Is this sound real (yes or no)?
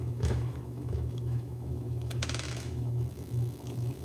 no